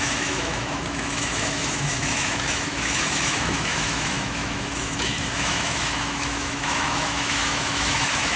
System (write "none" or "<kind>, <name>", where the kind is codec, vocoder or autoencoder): autoencoder, DAC-VAE